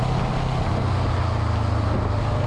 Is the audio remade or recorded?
recorded